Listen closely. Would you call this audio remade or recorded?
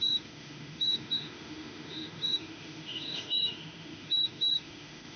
remade